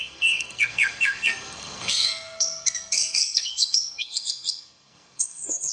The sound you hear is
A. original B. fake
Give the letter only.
B